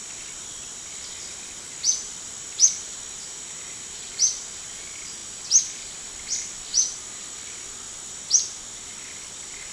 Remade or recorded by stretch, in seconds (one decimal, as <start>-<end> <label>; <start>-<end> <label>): 0.0-9.7 recorded